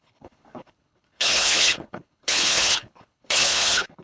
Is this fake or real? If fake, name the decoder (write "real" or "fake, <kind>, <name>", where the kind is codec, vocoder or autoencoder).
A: fake, codec, HILCodec